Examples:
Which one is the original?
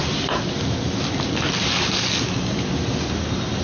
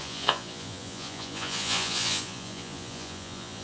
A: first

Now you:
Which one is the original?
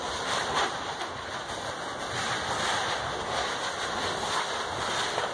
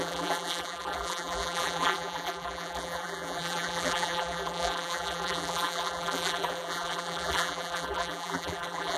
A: first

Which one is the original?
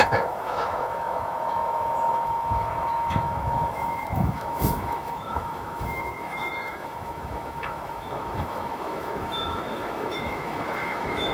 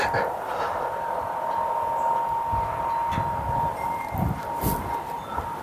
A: second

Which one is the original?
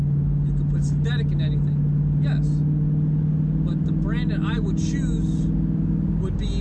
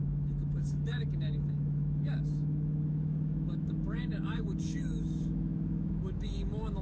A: first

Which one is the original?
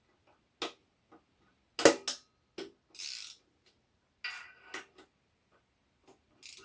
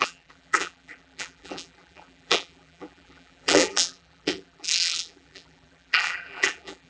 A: first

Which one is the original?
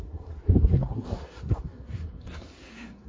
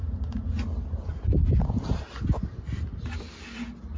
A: second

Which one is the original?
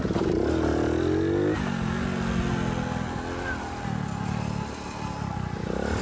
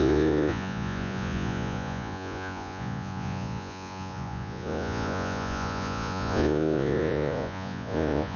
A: first